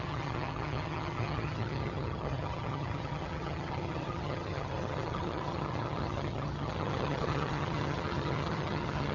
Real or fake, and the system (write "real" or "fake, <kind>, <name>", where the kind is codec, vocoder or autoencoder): fake, vocoder, HiFi-GAN